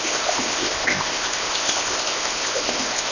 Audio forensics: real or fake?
fake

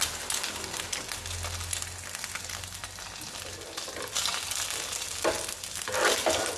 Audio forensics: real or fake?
real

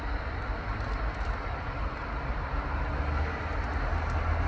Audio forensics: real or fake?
real